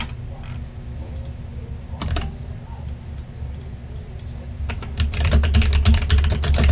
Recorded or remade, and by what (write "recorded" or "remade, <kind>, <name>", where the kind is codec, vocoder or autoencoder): recorded